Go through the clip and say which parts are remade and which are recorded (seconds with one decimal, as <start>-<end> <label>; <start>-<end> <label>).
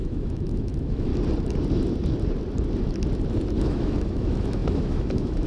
0.0-1.1 remade; 1.1-3.6 recorded; 3.6-5.5 remade